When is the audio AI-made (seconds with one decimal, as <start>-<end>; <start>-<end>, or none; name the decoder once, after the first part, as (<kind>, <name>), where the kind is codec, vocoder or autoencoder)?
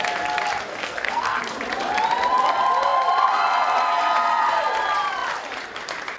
0.7-1.4 (codec, SNAC)